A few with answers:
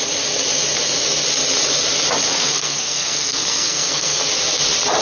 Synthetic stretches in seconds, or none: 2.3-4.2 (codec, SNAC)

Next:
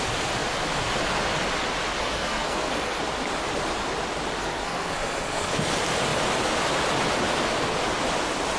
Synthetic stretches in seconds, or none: 2.0-3.0 (codec, SNAC); 4.4-5.6

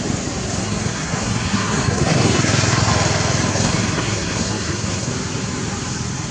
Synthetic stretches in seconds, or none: 0.6-2.9 (codec, SNAC); 3.5-5.1

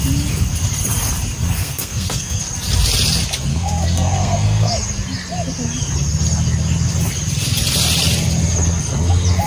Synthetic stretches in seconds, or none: 1.6-2.4 (codec, SNAC); 3.5-4.7

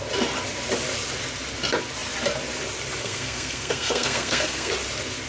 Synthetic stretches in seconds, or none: 3.0-4.7 (codec, SNAC)

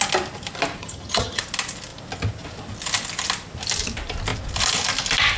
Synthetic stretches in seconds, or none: 0.8-1.4 (vocoder, HiFi-GAN)

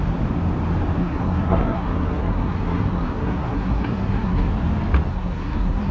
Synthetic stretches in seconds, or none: 1.0-4.5 (codec, SNAC); 5.1-5.9

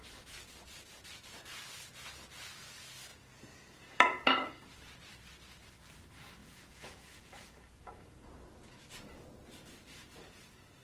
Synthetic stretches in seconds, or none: 3.1-4.3 (vocoder, Vocos); 6.4-7.9